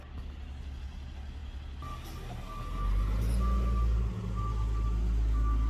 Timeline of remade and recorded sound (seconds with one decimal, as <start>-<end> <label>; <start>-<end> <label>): 0.0-5.7 recorded